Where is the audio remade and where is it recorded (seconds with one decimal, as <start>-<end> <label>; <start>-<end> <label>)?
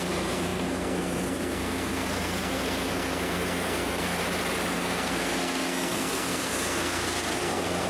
0.0-4.2 remade; 4.2-4.7 recorded; 4.7-7.9 remade